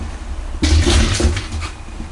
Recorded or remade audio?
recorded